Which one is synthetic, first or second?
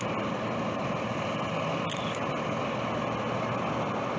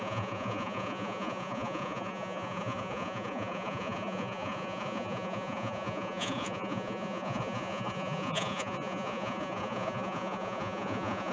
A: second